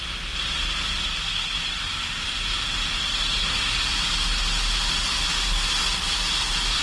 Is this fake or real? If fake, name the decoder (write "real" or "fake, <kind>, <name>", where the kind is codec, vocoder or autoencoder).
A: real